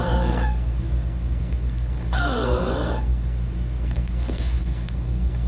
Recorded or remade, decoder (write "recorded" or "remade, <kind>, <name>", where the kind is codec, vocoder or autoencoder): remade, codec, SNAC